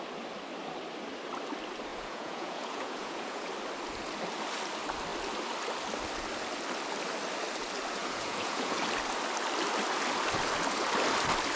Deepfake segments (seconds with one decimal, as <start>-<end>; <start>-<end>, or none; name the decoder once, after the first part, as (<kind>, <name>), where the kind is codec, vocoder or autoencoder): 1.9-3.5 (vocoder, Vocos); 8.0-8.8